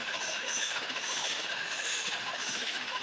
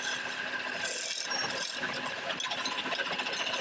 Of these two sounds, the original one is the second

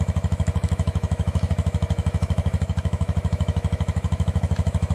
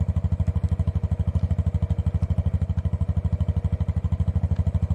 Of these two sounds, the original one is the second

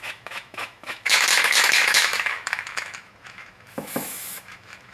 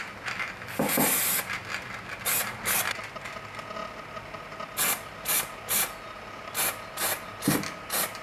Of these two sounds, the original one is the second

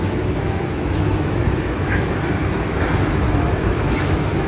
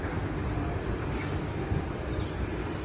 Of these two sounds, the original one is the second